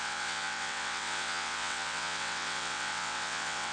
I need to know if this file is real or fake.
fake